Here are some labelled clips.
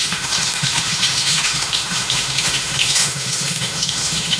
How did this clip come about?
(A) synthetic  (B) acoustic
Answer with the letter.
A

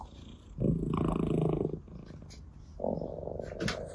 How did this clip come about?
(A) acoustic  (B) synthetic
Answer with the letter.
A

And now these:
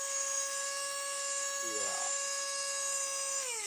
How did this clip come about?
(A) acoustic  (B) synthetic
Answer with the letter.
B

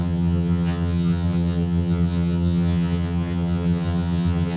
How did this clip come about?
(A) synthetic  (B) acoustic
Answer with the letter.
A